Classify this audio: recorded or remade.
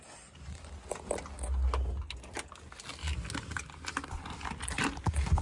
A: recorded